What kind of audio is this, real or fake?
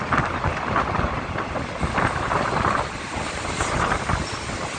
real